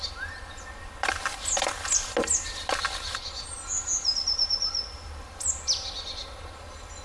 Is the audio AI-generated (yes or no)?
no